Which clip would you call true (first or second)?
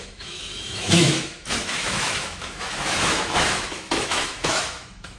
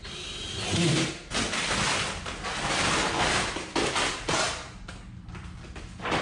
second